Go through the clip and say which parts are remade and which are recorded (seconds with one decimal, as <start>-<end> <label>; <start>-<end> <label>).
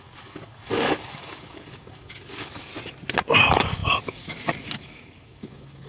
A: 0.0-2.7 remade; 2.7-3.4 recorded; 3.4-5.9 remade